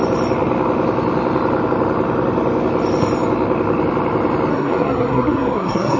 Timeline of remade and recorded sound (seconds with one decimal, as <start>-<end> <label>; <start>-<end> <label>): 0.0-4.5 recorded; 4.5-6.0 remade